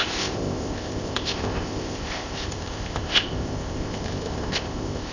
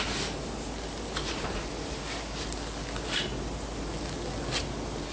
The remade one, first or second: first